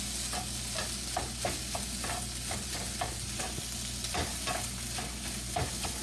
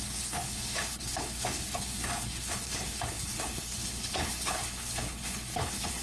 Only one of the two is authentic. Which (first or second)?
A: first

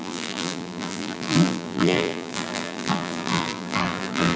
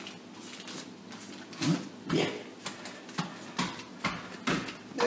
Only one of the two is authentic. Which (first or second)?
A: second